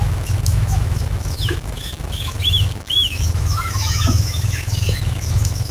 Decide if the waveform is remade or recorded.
remade